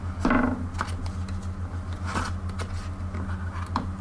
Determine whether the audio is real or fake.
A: real